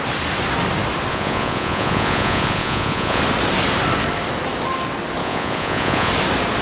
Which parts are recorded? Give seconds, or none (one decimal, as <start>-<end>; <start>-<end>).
0.0-1.1; 3.2-5.2; 6.1-6.6